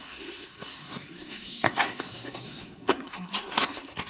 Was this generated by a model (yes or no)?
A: yes